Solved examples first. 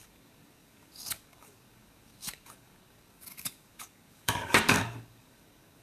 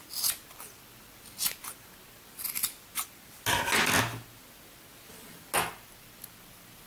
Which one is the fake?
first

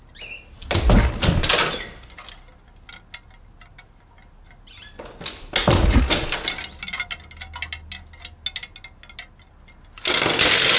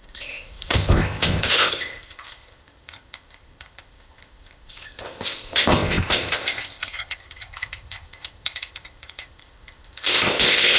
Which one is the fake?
second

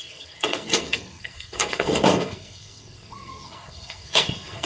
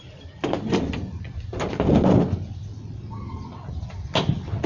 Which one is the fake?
first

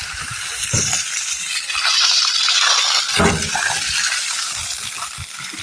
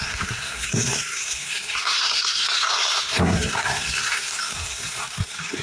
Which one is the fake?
second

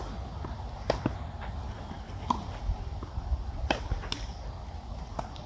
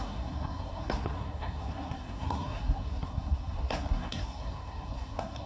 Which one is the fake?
second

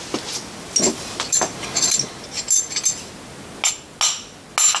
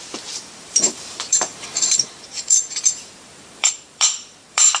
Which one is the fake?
second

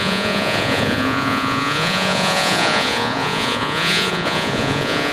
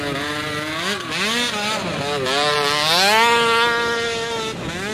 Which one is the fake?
first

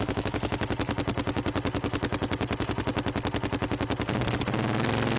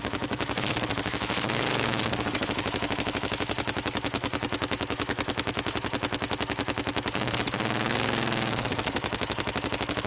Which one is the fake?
second